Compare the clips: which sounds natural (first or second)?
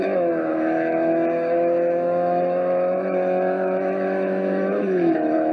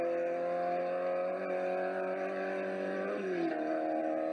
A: second